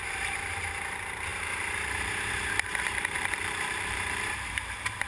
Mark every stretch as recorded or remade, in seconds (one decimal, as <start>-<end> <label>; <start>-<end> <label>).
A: 0.0-5.1 remade